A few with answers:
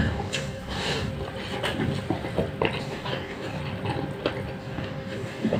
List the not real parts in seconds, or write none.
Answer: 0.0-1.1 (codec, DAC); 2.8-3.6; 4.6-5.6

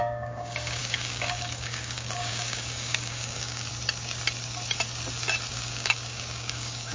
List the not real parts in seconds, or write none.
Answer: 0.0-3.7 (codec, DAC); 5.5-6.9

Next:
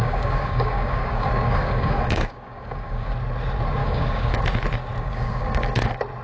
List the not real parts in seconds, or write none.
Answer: 0.0-3.1 (codec, DAC); 3.8-4.4; 4.9-5.7

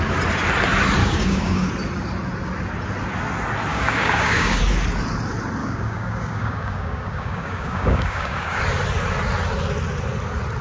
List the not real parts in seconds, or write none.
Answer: 1.0-1.7 (codec, DAC); 3.7-4.6; 5.6-8.6